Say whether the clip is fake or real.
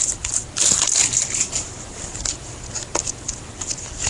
fake